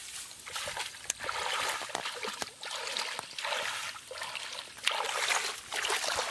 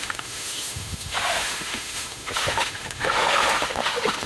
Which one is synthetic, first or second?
second